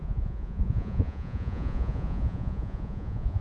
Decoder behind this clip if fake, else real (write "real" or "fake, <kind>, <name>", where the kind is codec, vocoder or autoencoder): fake, vocoder, Vocos